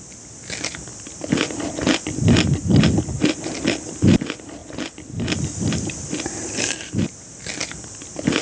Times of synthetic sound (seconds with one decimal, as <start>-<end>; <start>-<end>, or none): none